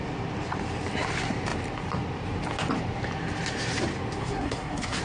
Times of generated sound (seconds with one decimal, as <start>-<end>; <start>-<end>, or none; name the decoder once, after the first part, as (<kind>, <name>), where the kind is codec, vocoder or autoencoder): 4.2-5.0 (codec, SNAC)